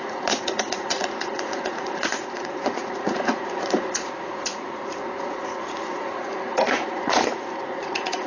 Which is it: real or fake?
fake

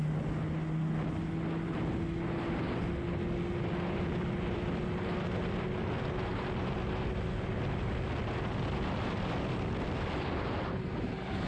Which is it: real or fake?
real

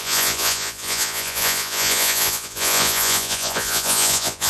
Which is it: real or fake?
fake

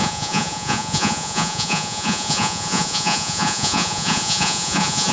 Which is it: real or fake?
fake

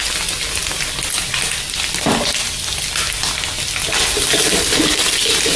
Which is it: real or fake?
real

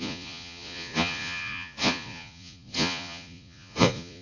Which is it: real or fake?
fake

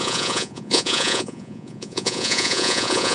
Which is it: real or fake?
fake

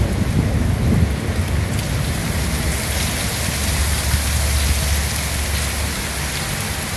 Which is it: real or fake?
real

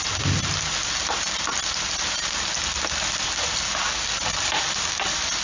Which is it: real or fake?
real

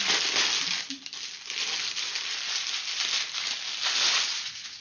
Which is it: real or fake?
real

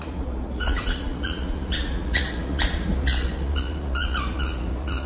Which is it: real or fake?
fake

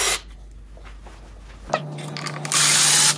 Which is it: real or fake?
real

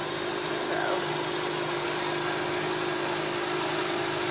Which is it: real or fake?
real